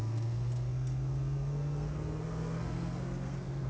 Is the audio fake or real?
fake